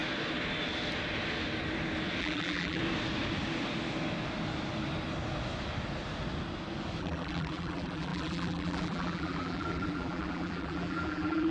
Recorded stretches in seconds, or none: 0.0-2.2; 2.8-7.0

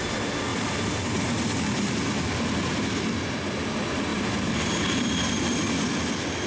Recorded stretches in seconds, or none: 0.0-0.5; 2.0-4.1; 5.4-6.5

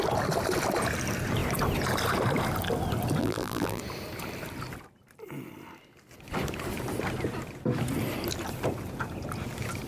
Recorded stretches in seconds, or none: 0.0-3.2; 3.8-9.9

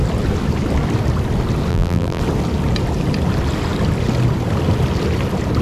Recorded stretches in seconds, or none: 0.0-1.7; 2.2-5.6

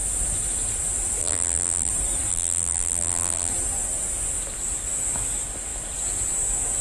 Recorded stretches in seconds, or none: 0.0-1.2; 1.9-2.3; 3.5-6.8

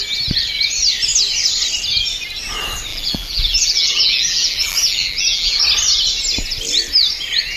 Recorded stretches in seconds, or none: 0.0-2.9; 5.6-7.6

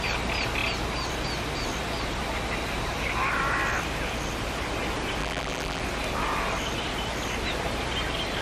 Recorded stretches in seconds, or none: 0.0-5.2; 5.8-8.4

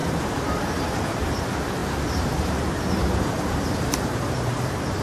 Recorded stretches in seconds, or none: none